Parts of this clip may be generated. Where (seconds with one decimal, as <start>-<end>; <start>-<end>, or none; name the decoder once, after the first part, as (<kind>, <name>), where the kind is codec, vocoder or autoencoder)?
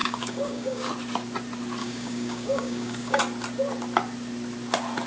0.0-0.9 (codec, DAC); 1.8-3.2